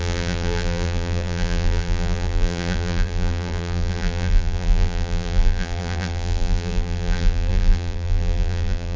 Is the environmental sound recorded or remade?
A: remade